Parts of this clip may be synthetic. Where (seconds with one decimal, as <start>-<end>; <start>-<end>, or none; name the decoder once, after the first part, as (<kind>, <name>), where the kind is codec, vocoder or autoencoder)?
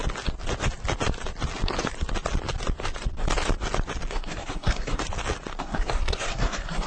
4.1-5.0 (codec, SNAC); 5.6-6.9